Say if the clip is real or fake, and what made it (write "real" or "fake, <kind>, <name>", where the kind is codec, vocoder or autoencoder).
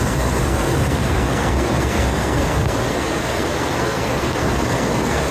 fake, codec, SNAC